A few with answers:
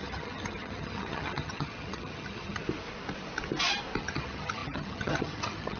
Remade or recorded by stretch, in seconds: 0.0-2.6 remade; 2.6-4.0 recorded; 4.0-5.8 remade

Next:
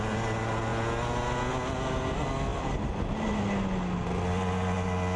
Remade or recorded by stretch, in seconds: 0.0-5.2 recorded

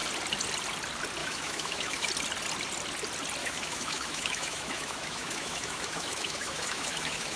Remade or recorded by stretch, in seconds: 0.0-1.2 recorded; 1.2-2.1 remade; 2.1-3.4 recorded; 3.4-7.4 remade

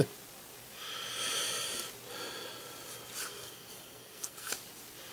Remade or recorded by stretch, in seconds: 0.0-3.3 recorded; 3.3-4.5 remade; 4.5-5.1 recorded

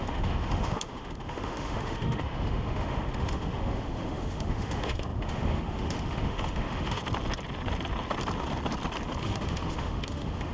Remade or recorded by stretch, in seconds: 0.0-7.0 remade; 7.0-9.2 recorded; 9.2-10.5 remade

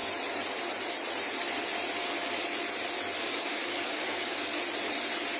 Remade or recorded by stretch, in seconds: 0.0-3.2 recorded; 3.2-4.5 remade; 4.5-5.4 recorded

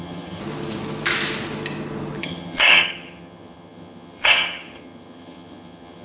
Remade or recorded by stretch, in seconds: 0.0-0.4 remade; 0.4-2.2 recorded; 2.2-6.0 remade